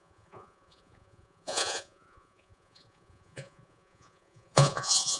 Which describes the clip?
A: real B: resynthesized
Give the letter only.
B